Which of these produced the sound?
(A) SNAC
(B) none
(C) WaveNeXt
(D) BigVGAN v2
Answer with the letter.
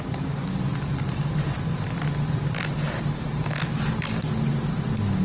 B